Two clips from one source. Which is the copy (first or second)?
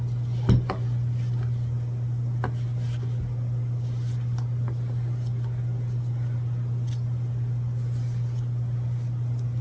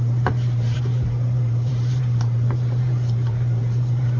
second